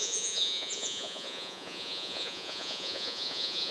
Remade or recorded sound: remade